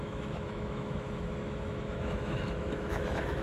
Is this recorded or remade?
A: remade